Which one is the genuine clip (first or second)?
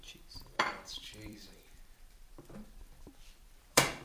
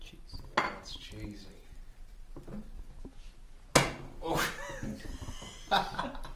second